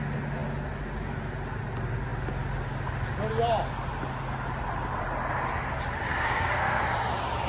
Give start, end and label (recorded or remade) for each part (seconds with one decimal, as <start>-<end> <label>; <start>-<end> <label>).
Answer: 0.0-6.1 recorded; 6.1-6.8 remade; 6.8-7.5 recorded